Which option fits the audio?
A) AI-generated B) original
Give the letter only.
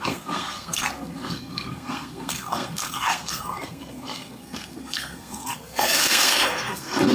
A